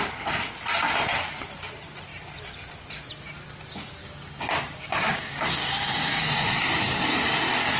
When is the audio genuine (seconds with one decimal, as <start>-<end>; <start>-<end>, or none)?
0.0-4.0; 6.4-7.8